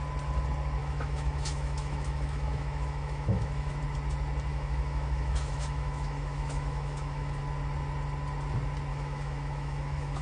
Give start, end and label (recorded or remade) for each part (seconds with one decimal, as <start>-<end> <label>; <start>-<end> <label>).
0.0-0.8 recorded; 0.8-3.8 remade; 3.8-4.5 recorded; 4.5-7.4 remade; 7.4-8.9 recorded; 8.9-10.2 remade

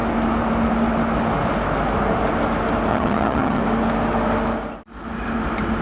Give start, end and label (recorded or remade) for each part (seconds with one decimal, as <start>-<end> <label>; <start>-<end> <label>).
0.0-2.9 recorded; 2.9-3.6 remade; 3.6-5.8 recorded

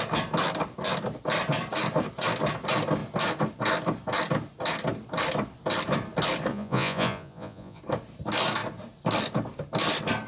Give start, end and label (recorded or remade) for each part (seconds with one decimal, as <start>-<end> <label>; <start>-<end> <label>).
0.0-6.5 recorded; 6.5-7.8 remade; 7.8-10.3 recorded

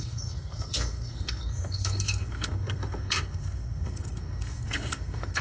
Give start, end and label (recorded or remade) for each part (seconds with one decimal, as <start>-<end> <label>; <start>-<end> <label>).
0.0-5.4 remade

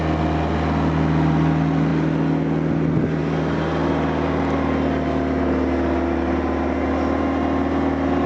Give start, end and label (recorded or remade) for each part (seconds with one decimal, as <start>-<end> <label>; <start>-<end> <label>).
0.0-8.3 recorded

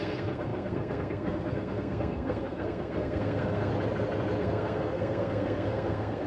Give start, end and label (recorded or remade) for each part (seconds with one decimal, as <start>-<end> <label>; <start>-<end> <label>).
0.0-3.7 remade; 3.7-4.4 recorded; 4.4-6.3 remade

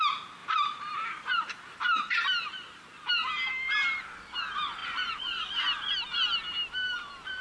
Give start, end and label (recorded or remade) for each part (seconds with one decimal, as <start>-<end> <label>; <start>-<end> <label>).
0.0-0.4 recorded; 0.4-3.5 remade; 3.5-7.4 recorded

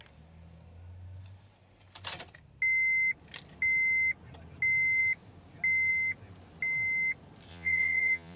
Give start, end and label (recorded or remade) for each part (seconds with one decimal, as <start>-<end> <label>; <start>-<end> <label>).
0.0-7.5 recorded; 7.5-8.4 remade